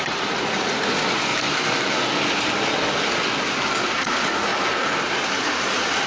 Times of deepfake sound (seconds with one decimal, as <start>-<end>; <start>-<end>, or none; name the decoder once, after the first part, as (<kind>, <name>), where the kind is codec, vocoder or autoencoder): 0.0-1.3 (vocoder, Vocos); 4.0-4.5; 5.4-6.1